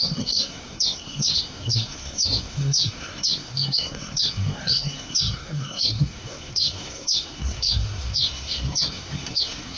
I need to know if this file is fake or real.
fake